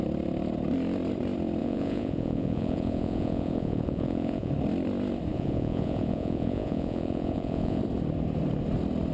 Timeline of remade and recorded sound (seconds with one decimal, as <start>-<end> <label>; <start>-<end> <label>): 0.0-1.6 recorded; 1.6-4.5 remade; 4.5-5.3 recorded; 5.3-7.8 remade; 7.8-9.1 recorded